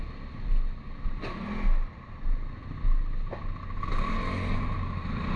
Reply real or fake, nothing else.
real